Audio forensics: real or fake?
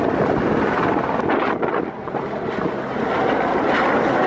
real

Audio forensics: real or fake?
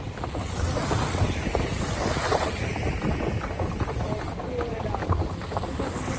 real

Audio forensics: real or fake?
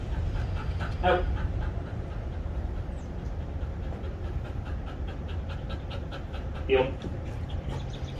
fake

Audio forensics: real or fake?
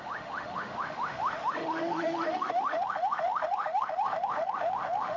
fake